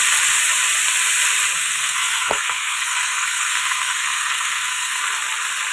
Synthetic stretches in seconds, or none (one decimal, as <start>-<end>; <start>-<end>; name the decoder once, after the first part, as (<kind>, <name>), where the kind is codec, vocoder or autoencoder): 1.6-5.0 (codec, SNAC)